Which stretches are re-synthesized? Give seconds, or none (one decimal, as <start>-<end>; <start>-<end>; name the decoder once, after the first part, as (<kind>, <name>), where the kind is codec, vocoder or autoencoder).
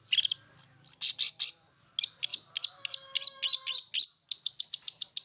none